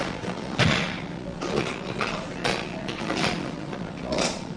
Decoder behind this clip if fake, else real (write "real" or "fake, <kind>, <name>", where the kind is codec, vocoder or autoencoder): fake, vocoder, Vocos